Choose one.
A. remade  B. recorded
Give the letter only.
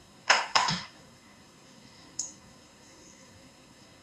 A